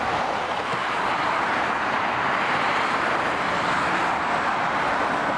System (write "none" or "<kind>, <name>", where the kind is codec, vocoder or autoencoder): vocoder, BigVGAN v2